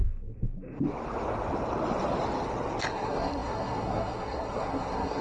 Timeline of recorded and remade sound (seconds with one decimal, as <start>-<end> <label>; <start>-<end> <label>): 0.0-2.9 recorded; 2.9-5.2 remade